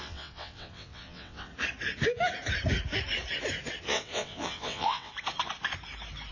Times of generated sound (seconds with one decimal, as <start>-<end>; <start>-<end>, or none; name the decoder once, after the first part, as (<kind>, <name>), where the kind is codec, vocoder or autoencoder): 0.0-1.5 (vocoder, WaveNeXt); 3.8-5.1